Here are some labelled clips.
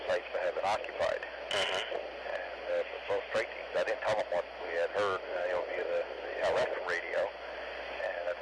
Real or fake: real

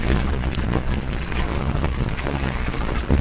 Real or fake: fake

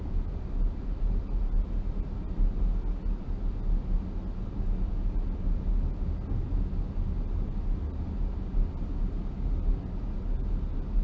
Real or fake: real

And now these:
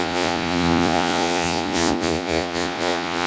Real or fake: fake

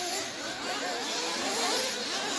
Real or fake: real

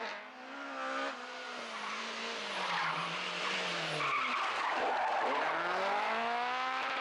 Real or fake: real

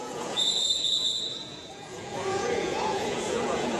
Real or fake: fake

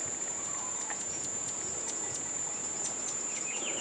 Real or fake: fake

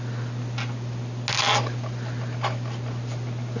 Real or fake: real